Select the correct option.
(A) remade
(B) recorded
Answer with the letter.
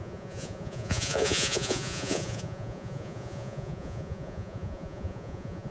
A